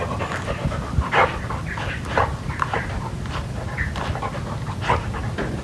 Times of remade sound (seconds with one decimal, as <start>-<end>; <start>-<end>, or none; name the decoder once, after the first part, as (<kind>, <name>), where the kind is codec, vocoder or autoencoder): none